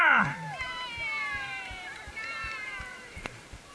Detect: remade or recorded remade